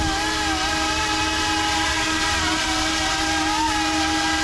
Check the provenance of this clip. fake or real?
real